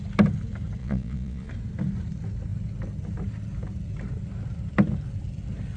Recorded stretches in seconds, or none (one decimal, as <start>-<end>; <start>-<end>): 0.0-0.8; 1.5-5.8